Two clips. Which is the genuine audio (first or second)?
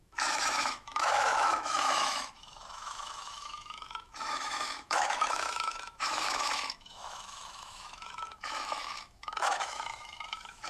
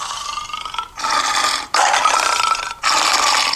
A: second